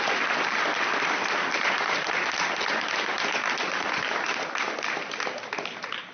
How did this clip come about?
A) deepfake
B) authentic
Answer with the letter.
B